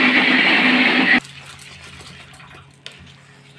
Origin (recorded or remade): recorded